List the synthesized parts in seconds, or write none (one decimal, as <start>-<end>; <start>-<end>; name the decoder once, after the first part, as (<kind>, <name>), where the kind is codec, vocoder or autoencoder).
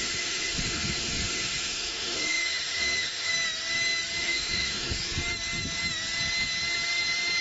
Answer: 0.0-3.3 (autoencoder, DAC-VAE); 4.2-4.9